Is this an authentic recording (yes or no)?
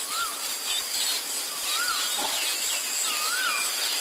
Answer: yes